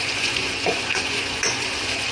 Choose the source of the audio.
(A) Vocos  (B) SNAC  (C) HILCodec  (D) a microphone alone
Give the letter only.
A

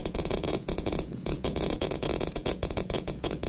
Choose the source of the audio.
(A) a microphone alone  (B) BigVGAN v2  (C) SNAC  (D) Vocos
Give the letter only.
D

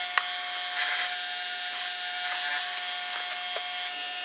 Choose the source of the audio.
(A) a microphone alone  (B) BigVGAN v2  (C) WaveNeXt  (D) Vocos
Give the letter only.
A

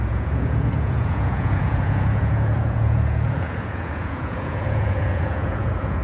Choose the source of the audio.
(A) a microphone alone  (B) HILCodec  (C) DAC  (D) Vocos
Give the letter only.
D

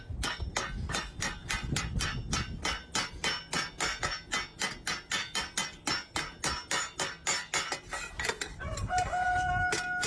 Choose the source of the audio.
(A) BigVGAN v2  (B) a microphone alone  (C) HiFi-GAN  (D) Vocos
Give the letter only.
B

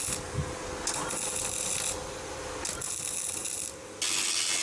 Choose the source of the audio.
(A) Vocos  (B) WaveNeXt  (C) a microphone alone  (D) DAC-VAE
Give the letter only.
C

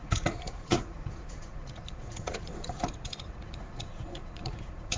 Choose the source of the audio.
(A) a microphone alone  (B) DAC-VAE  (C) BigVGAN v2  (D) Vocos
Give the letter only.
D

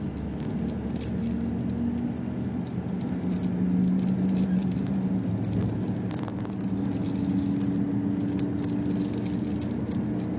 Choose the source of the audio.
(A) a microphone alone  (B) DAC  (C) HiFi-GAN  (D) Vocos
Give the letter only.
A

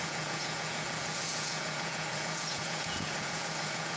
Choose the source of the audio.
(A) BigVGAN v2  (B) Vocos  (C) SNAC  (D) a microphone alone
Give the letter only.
B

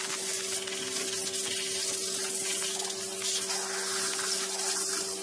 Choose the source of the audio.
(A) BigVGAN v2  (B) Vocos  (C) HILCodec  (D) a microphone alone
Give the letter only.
D